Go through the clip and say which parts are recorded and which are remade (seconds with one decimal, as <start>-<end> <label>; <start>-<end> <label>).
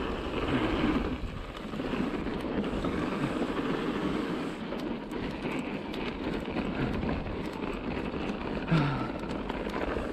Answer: 0.0-2.3 recorded; 2.3-3.3 remade; 3.3-4.0 recorded; 4.0-4.6 remade; 4.6-10.1 recorded